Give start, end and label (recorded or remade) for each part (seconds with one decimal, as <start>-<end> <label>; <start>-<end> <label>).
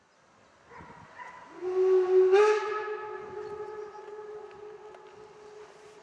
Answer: 0.0-6.0 recorded